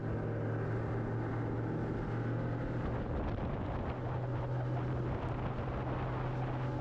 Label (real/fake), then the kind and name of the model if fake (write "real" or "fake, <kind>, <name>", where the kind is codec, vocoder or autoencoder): real